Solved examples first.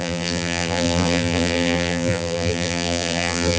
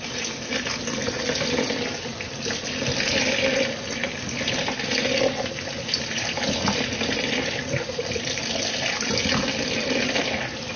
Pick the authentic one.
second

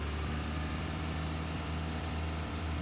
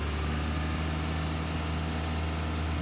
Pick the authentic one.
second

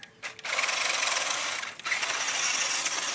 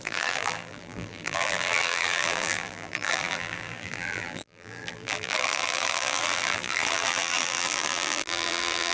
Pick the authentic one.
first